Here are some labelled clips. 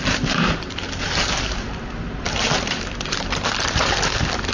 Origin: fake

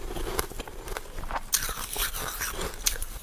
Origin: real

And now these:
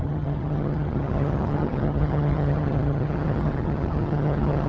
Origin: fake